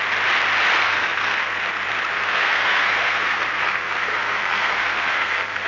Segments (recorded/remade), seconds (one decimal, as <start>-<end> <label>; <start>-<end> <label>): 0.0-0.8 recorded; 0.8-1.6 remade; 1.6-2.1 recorded; 2.1-5.7 remade